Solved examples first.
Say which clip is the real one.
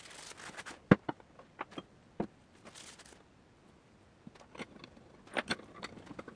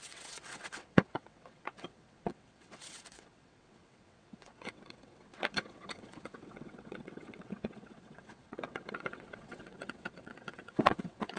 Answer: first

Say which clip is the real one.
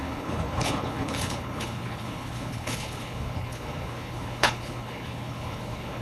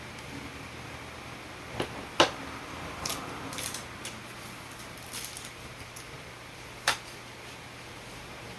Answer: second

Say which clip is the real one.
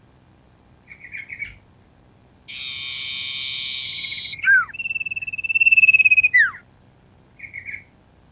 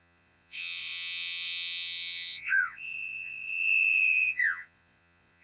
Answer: first